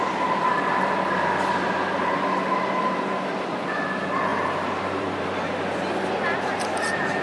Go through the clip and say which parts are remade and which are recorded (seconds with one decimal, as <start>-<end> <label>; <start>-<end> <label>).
0.0-3.7 remade; 3.7-4.3 recorded; 4.3-5.5 remade; 5.5-7.2 recorded